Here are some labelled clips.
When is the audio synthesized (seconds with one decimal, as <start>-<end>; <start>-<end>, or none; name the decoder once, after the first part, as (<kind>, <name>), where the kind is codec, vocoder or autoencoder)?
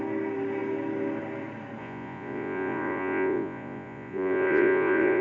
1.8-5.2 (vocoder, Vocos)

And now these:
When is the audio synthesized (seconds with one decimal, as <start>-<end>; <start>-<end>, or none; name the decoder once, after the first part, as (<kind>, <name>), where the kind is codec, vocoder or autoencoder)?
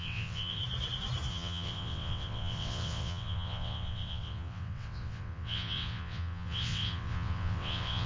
0.0-0.6 (vocoder, WaveNeXt); 1.3-8.1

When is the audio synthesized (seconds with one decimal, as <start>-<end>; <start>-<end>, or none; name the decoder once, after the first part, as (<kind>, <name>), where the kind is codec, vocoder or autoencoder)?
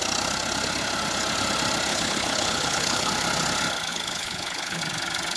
1.9-3.1 (codec, HILCodec); 3.9-4.8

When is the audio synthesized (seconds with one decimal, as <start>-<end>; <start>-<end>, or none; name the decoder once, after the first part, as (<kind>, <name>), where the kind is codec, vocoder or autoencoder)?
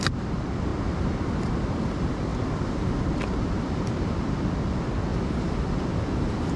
none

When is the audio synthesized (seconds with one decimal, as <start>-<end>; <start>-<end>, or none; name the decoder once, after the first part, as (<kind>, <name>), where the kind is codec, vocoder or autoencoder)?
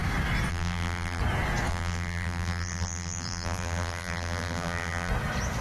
0.5-1.2 (vocoder, BigVGAN v2); 1.7-5.1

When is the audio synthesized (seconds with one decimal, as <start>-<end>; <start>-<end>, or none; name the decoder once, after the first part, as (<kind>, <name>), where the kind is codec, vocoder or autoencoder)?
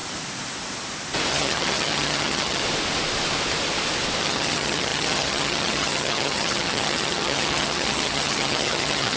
1.3-2.6 (vocoder, HiFi-GAN); 4.2-9.2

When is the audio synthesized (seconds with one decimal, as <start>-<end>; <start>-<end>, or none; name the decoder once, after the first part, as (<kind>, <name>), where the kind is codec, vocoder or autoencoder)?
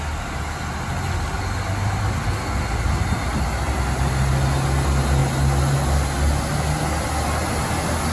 none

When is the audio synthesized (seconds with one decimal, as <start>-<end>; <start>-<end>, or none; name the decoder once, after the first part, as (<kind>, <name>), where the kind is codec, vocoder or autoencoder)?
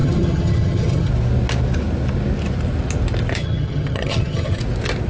0.0-1.1 (vocoder, HiFi-GAN); 3.4-4.6